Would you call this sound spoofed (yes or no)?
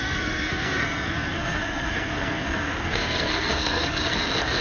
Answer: yes